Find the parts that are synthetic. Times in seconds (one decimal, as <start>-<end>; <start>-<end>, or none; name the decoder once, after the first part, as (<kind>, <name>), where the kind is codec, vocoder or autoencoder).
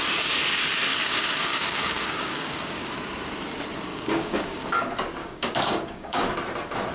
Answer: 0.9-2.9 (codec, DAC); 3.9-4.6; 5.2-6.3